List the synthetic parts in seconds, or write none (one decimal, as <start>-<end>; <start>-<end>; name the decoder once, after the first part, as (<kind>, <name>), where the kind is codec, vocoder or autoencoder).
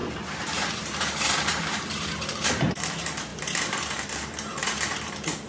0.0-5.5 (vocoder, BigVGAN v2)